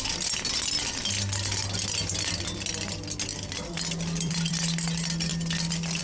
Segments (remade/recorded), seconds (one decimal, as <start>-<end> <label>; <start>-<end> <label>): 0.0-3.3 recorded; 3.3-4.5 remade; 4.5-5.3 recorded; 5.3-6.0 remade